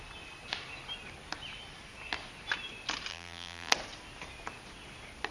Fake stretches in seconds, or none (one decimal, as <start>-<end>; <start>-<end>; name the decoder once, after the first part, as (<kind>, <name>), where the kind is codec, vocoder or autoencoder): 3.1-3.7 (vocoder, BigVGAN v2)

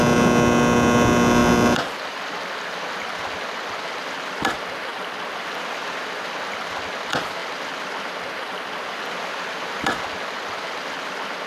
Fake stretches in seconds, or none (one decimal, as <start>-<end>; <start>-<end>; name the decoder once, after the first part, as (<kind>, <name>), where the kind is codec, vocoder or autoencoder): none

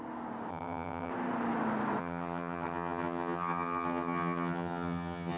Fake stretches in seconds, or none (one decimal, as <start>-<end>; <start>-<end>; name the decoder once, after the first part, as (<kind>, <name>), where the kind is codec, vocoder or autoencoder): 0.5-1.1 (vocoder, HiFi-GAN); 2.0-5.4

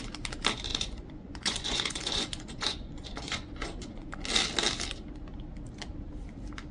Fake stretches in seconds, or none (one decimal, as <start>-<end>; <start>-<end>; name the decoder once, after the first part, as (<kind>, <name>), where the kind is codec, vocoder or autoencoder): 0.7-4.2 (vocoder, Vocos)

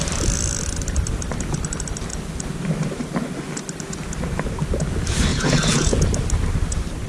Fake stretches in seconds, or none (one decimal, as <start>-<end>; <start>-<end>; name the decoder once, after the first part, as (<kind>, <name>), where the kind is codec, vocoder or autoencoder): 5.3-6.1 (vocoder, Vocos)

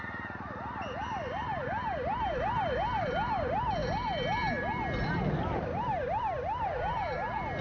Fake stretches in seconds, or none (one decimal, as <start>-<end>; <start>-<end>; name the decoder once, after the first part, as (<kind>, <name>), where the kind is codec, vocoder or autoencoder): none